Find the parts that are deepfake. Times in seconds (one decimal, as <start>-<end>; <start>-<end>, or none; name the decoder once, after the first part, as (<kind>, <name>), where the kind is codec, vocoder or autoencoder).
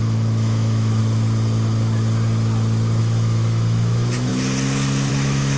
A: 0.0-1.0 (autoencoder, DAC-VAE); 3.0-4.3; 5.1-5.6